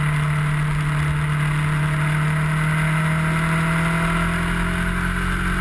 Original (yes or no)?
yes